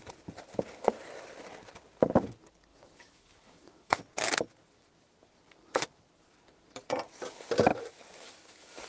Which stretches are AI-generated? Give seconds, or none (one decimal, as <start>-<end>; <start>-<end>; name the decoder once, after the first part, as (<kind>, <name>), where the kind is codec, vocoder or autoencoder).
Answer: 2.7-4.0 (autoencoder, DAC-VAE); 7.7-8.9